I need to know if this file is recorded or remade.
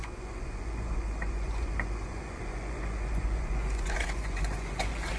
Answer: remade